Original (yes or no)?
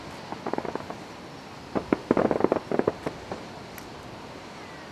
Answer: yes